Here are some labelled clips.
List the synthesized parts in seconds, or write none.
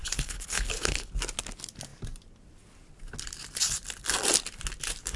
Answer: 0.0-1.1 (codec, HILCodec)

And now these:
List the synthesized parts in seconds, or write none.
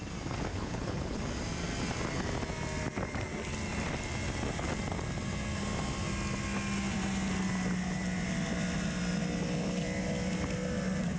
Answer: 0.5-1.2 (codec, HILCodec)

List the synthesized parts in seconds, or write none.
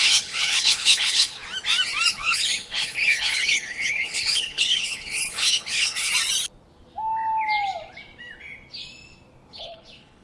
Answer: 0.0-1.4 (codec, HILCodec); 2.1-6.1; 9.5-10.2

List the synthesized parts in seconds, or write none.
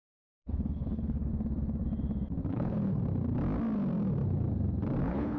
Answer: 0.0-1.3 (codec, HILCodec); 2.5-3.0; 5.0-5.4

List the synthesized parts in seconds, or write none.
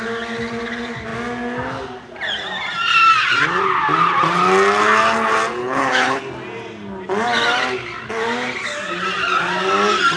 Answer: 5.6-6.2 (codec, HILCodec)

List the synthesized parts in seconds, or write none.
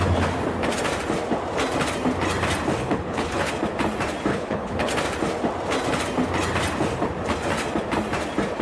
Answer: 2.8-3.5 (codec, HILCodec); 4.3-4.9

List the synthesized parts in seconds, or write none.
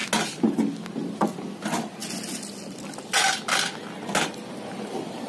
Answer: none